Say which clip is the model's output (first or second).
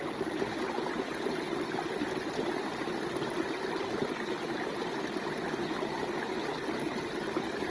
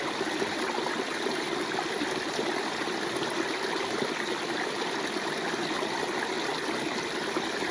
second